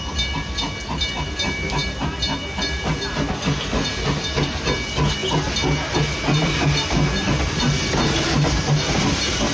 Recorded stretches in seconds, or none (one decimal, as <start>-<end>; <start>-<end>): 0.0-9.5